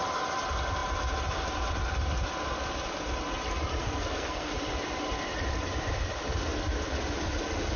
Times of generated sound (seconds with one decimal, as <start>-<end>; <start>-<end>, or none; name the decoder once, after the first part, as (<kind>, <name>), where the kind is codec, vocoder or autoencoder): 3.8-4.5 (codec, SNAC)